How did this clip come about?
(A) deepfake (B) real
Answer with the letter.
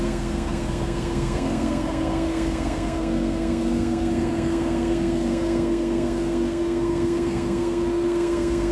A